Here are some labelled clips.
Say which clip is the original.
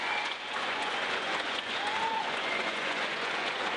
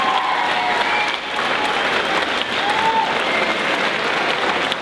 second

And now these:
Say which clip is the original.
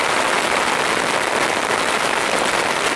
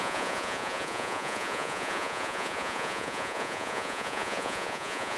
first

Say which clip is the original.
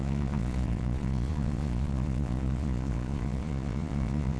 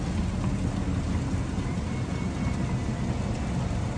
second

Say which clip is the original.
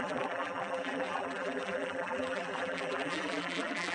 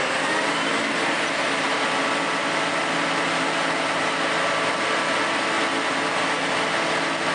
second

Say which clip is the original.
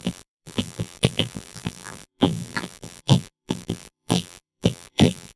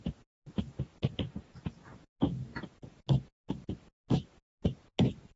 second